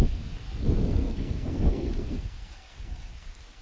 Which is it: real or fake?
fake